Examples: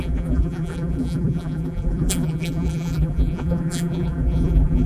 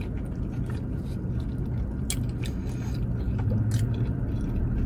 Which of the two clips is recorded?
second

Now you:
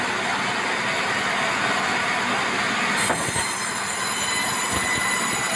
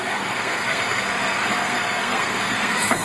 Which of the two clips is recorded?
first